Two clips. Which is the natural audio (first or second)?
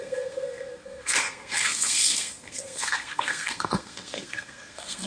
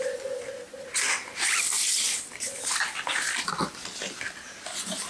second